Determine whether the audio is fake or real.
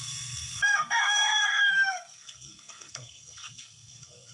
fake